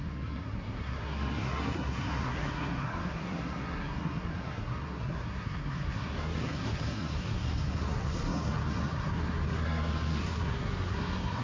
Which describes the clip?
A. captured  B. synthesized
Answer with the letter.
B